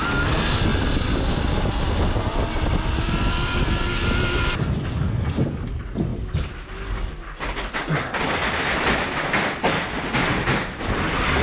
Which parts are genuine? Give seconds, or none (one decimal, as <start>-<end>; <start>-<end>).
0.0-11.4